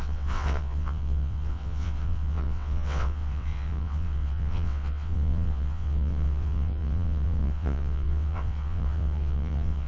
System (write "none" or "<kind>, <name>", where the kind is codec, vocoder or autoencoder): vocoder, WaveNeXt